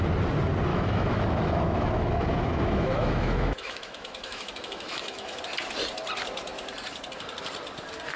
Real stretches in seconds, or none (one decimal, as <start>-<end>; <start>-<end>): 0.0-0.7; 5.4-8.2